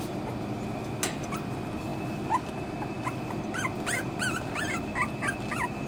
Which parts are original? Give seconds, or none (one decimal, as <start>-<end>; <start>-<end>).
0.0-5.9